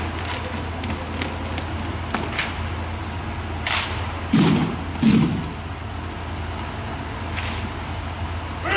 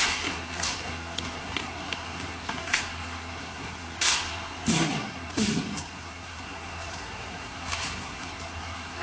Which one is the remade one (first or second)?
second